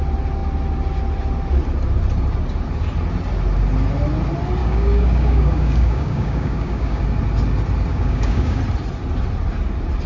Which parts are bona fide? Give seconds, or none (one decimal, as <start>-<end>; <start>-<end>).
0.0-4.6; 7.0-7.9; 8.6-10.1